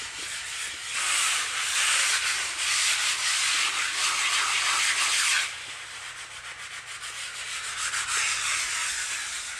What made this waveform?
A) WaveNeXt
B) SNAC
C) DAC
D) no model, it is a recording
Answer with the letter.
D